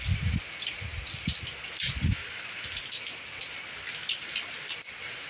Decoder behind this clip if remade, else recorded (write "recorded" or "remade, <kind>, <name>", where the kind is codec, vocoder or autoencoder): recorded